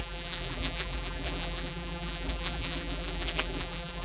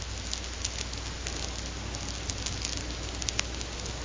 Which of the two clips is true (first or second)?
second